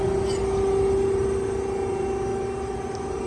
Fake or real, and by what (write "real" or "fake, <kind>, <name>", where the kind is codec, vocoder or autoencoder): real